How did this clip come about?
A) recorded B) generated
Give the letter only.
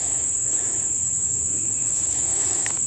B